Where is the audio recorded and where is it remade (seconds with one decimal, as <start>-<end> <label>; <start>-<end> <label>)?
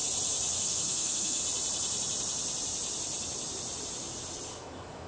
0.0-0.6 recorded; 0.6-1.4 remade; 1.4-4.5 recorded; 4.5-5.1 remade